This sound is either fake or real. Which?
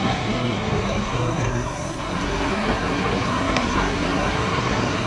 fake